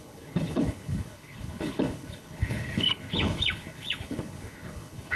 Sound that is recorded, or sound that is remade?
remade